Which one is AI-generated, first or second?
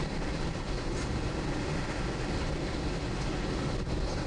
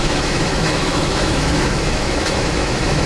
second